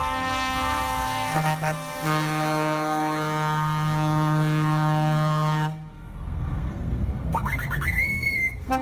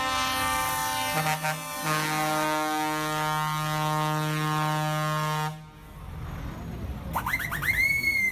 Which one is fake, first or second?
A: first